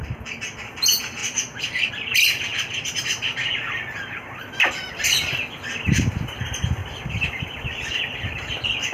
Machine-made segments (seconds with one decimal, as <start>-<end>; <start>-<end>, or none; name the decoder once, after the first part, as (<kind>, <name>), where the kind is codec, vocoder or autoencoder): 1.2-1.9 (vocoder, BigVGAN v2); 6.8-8.0

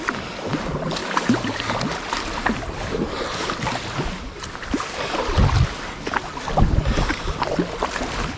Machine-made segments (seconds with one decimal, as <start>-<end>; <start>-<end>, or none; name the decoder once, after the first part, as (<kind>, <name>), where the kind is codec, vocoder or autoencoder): none

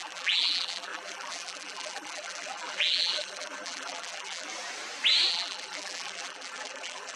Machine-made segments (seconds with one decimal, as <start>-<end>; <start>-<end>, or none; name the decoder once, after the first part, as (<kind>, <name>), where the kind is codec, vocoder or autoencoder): 0.0-4.5 (vocoder, BigVGAN v2); 5.3-7.2

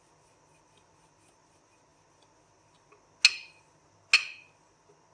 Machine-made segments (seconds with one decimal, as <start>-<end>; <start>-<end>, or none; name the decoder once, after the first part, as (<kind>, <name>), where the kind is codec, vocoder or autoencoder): none

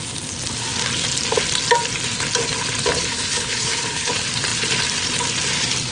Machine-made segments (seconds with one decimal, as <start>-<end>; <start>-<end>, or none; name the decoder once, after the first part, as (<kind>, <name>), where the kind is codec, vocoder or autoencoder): 3.1-4.1 (codec, HILCodec)

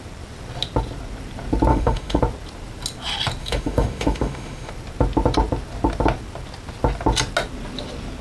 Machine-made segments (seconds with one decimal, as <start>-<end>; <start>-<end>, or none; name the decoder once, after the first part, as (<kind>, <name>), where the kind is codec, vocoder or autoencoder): 1.7-2.2 (autoencoder, DAC-VAE); 3.4-4.7

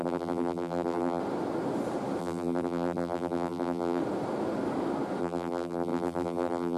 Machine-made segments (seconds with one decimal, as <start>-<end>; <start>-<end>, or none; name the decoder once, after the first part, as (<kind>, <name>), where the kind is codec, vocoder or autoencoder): 0.0-1.2 (vocoder, BigVGAN v2); 2.2-4.0; 5.2-6.8

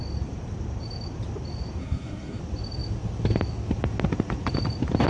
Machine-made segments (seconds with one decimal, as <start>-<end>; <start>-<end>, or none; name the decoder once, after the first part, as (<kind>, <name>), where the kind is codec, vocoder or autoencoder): 1.8-2.4 (codec, SNAC)